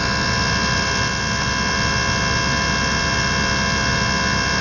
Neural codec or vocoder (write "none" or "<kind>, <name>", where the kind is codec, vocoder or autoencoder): none